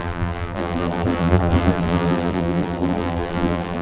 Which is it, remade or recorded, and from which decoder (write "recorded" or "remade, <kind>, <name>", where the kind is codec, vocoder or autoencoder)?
remade, vocoder, BigVGAN v2